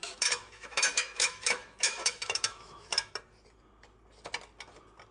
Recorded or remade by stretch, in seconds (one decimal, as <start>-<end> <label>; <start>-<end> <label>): 0.0-3.1 remade; 3.1-5.1 recorded